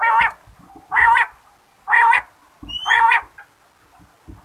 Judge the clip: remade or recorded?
recorded